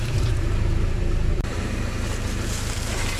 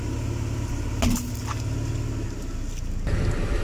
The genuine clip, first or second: second